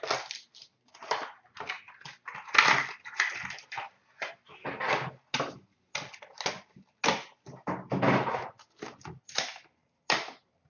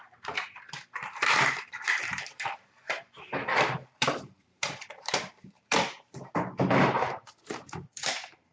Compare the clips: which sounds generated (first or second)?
second